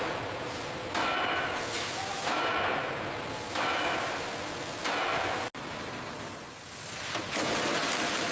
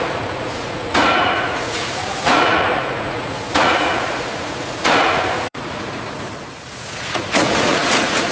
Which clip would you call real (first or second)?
first